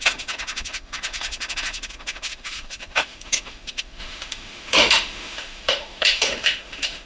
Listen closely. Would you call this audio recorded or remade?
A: remade